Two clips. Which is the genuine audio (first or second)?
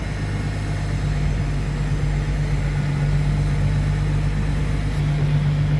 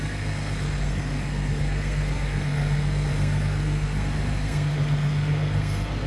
first